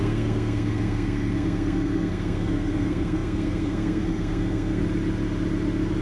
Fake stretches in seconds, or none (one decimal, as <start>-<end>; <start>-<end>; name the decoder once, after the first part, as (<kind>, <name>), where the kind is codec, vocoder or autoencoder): 0.0-4.8 (codec, SNAC)